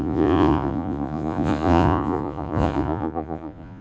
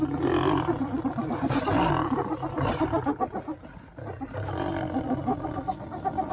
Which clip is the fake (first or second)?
first